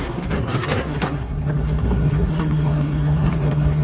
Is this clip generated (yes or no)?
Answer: yes